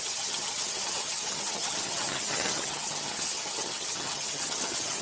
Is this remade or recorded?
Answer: remade